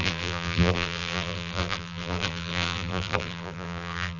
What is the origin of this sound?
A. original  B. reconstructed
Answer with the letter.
B